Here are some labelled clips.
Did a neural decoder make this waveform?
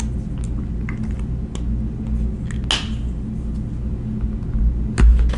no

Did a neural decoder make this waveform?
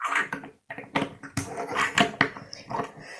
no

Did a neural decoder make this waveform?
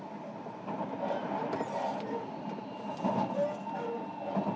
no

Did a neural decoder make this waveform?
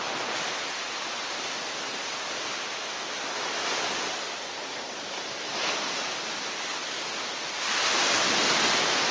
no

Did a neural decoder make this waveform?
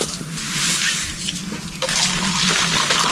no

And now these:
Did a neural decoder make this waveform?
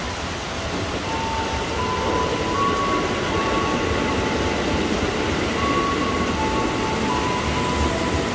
no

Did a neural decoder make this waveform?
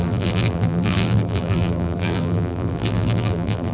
yes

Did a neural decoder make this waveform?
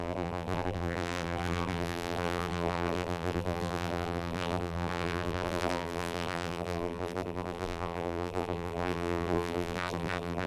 yes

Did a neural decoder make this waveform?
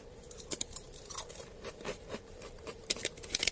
yes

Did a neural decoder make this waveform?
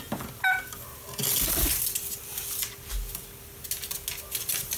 no